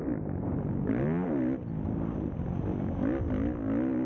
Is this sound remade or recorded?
recorded